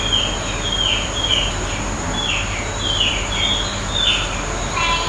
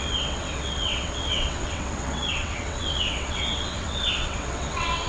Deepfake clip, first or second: second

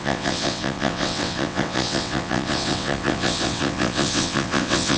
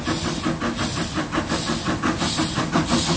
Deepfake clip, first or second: first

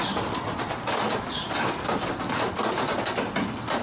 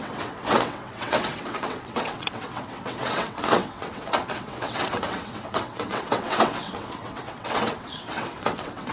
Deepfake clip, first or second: second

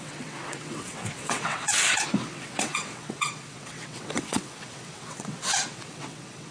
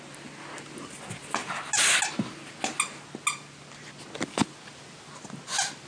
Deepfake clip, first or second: first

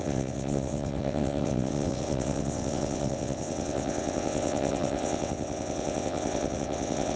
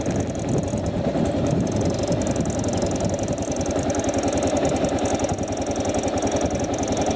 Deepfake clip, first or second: first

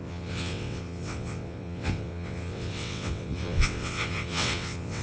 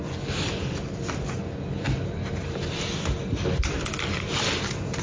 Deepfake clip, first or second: first